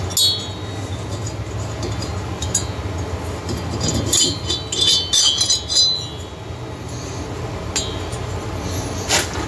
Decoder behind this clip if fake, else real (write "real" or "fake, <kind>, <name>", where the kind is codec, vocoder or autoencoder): real